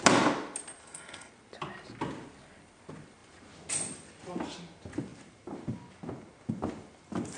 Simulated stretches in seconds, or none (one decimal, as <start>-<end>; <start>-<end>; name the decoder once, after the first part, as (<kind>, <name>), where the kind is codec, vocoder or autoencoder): 0.8-1.3 (codec, SNAC)